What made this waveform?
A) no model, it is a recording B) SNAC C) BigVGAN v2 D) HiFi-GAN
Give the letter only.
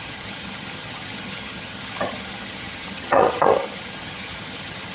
D